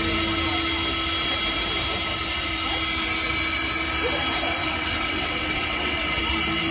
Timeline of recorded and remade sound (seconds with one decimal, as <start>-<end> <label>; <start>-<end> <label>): 0.0-4.6 recorded; 4.6-6.2 remade; 6.2-6.7 recorded